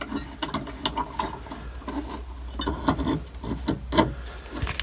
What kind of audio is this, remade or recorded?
recorded